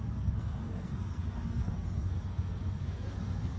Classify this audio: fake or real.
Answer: fake